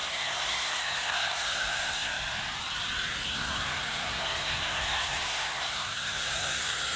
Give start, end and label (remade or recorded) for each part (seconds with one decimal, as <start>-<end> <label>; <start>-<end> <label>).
0.0-2.1 remade; 2.1-3.3 recorded; 3.3-7.0 remade

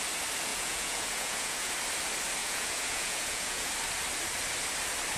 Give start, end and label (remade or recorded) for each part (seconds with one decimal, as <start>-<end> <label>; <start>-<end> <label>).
0.0-0.5 recorded; 0.5-1.7 remade; 1.7-2.4 recorded; 2.4-3.7 remade; 3.7-5.2 recorded

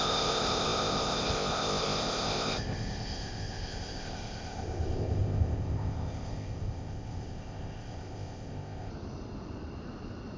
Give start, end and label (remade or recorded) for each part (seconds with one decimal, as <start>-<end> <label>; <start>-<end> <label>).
0.0-8.9 remade; 8.9-10.4 recorded

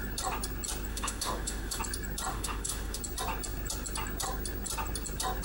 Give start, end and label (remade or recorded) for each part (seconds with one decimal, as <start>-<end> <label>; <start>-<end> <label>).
0.0-0.9 recorded; 0.9-1.8 remade; 1.8-2.3 recorded; 2.3-3.0 remade; 3.0-5.4 recorded